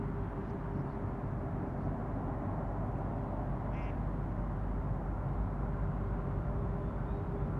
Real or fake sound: real